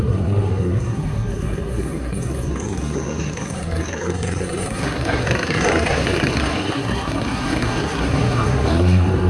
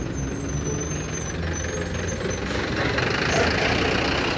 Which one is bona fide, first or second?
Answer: second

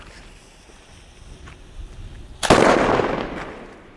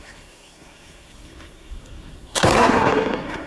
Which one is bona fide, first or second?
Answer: first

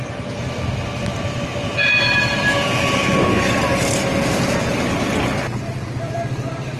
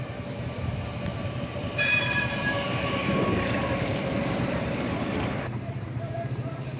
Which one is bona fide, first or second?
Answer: first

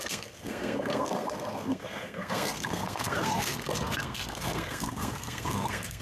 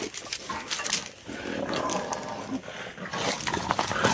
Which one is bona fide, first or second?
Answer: second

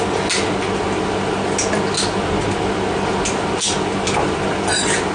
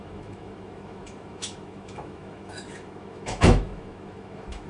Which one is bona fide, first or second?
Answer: first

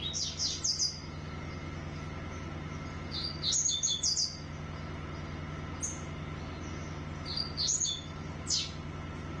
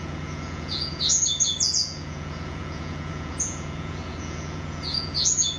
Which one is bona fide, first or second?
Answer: first